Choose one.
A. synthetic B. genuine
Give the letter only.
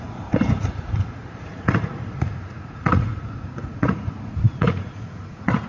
A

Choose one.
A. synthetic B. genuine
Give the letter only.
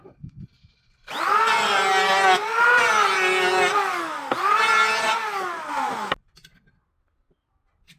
B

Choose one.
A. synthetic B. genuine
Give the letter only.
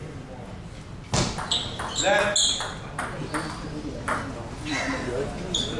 B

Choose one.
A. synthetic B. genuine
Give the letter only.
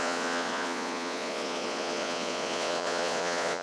A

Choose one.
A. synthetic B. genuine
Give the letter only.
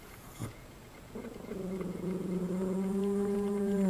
A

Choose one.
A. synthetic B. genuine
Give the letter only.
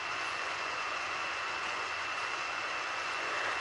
A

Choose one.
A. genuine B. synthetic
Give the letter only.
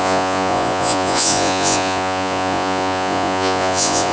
B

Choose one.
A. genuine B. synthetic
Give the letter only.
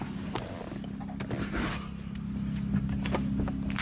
A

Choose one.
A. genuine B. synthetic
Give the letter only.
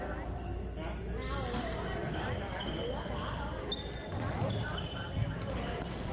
A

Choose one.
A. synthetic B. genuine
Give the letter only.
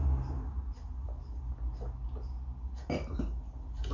B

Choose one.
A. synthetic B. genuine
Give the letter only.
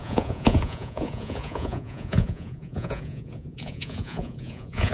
A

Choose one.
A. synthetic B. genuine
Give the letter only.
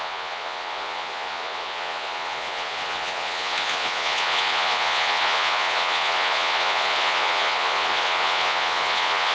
A